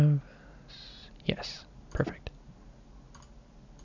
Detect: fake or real real